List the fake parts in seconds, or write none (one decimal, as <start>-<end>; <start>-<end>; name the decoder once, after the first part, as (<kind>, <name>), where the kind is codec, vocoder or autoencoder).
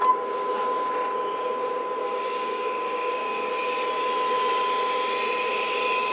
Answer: 2.0-3.5 (codec, DAC)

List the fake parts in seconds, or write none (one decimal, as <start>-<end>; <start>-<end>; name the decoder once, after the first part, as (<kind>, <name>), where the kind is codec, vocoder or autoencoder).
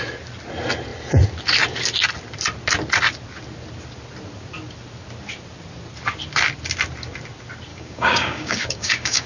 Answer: 7.7-9.3 (codec, DAC)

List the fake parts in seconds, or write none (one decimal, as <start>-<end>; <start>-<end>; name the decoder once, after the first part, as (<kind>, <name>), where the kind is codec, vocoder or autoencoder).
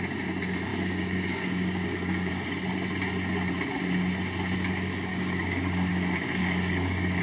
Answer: 0.7-2.3 (codec, DAC); 5.1-5.9; 6.4-7.2